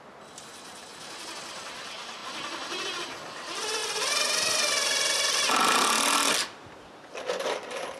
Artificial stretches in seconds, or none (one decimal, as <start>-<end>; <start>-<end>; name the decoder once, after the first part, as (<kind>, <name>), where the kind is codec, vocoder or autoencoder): 0.0-2.2 (vocoder, BigVGAN v2); 3.3-3.8; 6.3-8.0